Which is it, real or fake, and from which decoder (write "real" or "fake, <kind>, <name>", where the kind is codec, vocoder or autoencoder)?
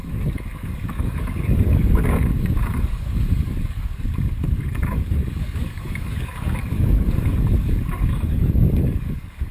fake, codec, DAC